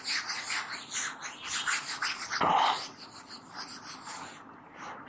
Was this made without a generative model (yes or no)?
yes